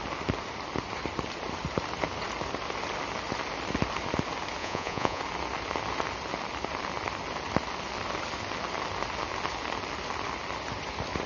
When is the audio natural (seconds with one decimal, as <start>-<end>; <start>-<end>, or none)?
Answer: 0.0-4.6; 5.2-11.3